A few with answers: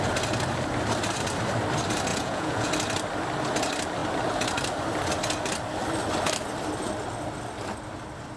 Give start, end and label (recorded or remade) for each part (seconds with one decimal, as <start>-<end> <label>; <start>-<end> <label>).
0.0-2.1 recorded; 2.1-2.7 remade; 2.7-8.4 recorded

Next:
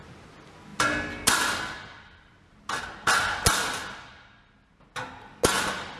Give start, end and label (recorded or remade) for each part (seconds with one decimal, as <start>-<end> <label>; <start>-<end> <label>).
0.0-6.0 recorded

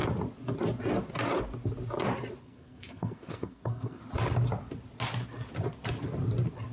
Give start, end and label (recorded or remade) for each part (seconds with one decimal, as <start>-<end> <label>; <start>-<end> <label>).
0.0-2.4 recorded; 2.4-4.0 remade; 4.0-6.7 recorded

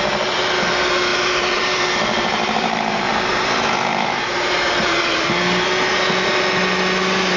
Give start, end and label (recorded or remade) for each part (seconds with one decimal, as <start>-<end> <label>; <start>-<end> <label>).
0.0-1.1 recorded; 1.1-5.4 remade; 5.4-7.4 recorded

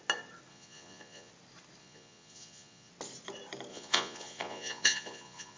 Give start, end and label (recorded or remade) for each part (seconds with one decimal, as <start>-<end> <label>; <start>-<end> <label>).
0.0-0.5 recorded; 0.5-1.3 remade; 1.3-1.8 recorded; 1.8-2.9 remade; 2.9-3.7 recorded; 3.7-5.6 remade

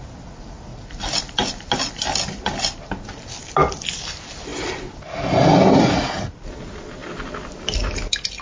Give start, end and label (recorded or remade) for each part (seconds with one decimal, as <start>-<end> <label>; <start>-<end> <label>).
0.0-4.5 recorded; 4.5-5.8 remade; 5.8-7.0 recorded; 7.0-8.4 remade

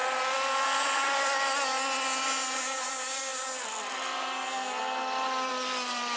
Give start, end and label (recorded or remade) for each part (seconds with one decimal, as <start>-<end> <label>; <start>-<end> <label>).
0.0-6.2 recorded

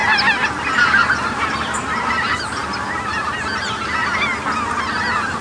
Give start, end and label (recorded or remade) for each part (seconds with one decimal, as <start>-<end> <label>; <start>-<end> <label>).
0.0-5.4 recorded